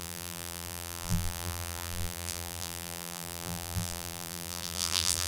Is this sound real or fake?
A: fake